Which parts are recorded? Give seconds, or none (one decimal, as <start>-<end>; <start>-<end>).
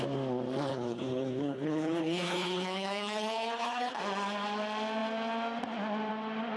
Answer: 0.0-0.7; 4.0-6.6